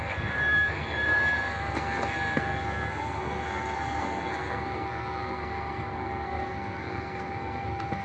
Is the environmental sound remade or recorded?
remade